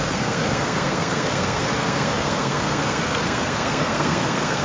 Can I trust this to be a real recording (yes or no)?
no